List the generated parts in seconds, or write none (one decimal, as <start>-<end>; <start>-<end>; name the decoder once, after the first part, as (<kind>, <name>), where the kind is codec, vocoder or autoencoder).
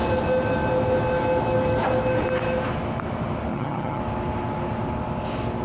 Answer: 3.5-4.0 (vocoder, HiFi-GAN)